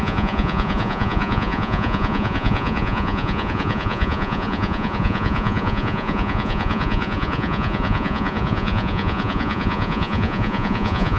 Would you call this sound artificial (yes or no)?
yes